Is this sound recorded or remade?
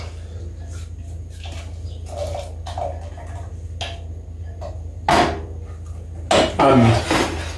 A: recorded